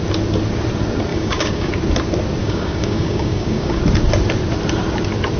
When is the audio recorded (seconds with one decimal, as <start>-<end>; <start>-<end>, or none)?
0.0-1.1; 1.7-2.4; 3.8-5.4